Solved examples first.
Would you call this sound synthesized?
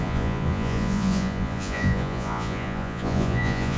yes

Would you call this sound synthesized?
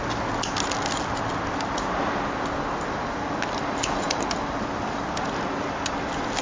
no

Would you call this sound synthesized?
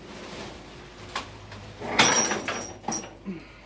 no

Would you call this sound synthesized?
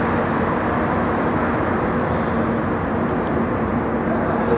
no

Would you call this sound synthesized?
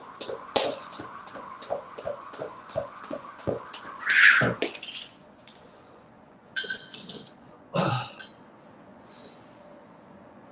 yes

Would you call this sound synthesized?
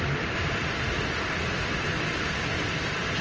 yes